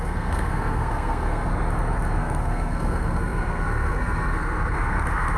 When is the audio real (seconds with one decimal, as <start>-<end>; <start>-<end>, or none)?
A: 1.5-2.2